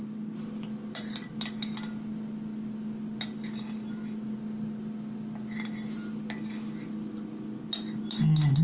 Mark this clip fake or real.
real